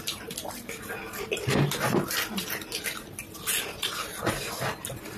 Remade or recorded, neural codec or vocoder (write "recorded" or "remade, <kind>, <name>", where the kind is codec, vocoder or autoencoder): recorded